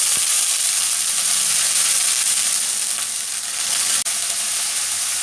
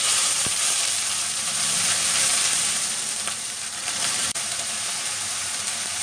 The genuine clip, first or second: first